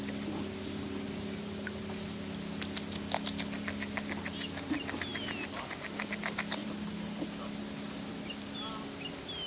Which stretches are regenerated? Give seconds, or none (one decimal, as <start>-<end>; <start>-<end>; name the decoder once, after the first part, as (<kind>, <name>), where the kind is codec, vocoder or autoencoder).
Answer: none